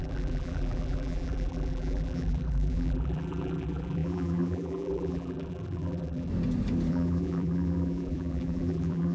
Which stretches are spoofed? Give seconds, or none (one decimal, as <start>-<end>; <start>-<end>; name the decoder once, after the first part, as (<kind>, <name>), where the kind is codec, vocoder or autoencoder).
0.0-6.3 (vocoder, BigVGAN v2); 6.9-9.1